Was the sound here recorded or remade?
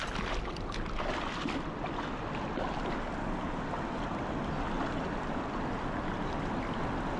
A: recorded